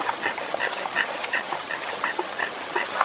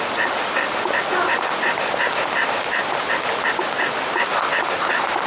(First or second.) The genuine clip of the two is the second